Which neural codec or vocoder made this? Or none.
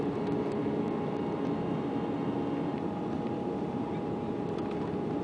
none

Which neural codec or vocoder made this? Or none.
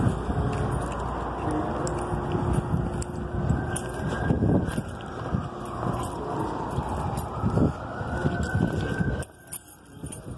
none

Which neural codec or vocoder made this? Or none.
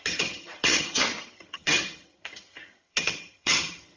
vocoder, HiFi-GAN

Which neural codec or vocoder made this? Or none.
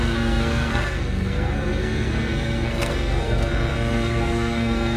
codec, SNAC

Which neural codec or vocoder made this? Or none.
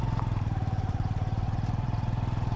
vocoder, BigVGAN v2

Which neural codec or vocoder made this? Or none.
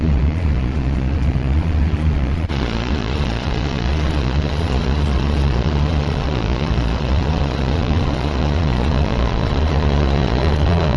vocoder, Vocos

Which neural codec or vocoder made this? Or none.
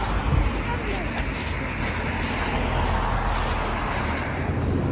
none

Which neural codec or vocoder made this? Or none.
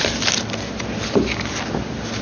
none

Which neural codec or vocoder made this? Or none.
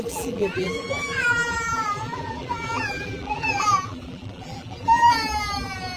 vocoder, BigVGAN v2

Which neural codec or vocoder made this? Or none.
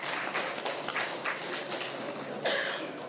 vocoder, BigVGAN v2